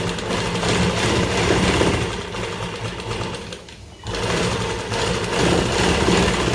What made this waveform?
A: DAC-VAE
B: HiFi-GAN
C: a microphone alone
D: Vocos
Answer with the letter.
C